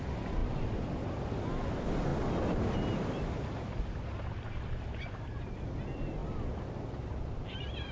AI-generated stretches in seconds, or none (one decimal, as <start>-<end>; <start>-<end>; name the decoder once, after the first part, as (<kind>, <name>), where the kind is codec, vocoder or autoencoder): none